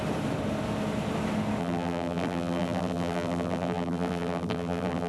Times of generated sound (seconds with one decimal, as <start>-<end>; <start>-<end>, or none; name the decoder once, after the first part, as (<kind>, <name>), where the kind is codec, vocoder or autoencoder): 1.6-5.1 (vocoder, BigVGAN v2)